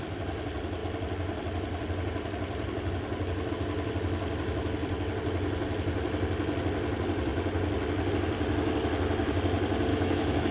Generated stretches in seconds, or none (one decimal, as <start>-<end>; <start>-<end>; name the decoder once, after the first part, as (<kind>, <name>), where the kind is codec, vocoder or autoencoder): 9.9-10.5 (autoencoder, DAC-VAE)